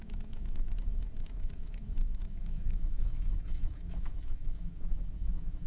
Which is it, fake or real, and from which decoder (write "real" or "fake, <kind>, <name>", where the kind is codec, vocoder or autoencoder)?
fake, autoencoder, DAC-VAE